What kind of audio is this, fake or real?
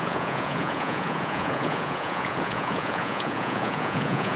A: fake